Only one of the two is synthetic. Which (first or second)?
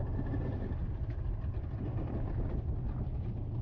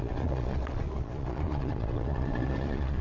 second